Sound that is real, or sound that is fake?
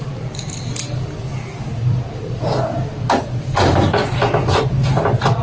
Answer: real